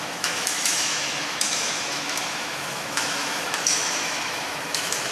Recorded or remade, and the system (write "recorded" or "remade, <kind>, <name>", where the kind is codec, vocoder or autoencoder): remade, autoencoder, DAC-VAE